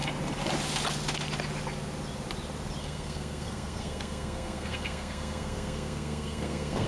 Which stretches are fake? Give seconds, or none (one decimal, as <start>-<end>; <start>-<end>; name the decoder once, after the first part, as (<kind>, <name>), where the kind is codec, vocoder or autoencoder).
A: 2.8-6.9 (codec, SNAC)